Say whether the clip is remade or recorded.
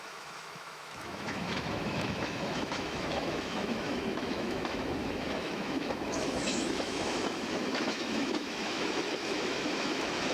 remade